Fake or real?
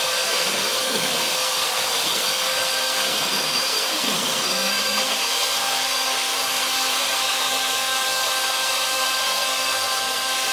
fake